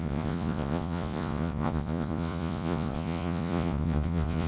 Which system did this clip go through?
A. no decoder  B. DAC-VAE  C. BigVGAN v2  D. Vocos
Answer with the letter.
D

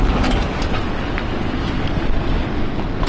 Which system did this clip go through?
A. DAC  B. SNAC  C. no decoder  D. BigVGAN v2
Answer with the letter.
C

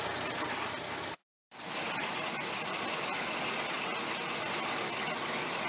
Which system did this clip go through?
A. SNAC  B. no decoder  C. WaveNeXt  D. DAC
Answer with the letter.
B